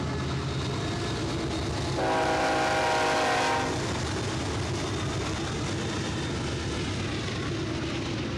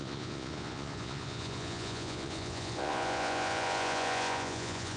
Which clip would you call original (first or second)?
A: first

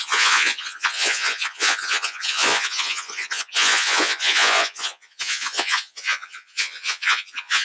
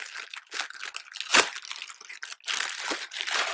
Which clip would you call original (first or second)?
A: second